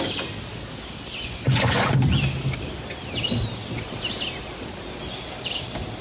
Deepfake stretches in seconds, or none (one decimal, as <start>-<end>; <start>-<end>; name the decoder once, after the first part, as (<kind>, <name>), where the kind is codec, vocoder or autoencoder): 1.1-1.9 (vocoder, Vocos)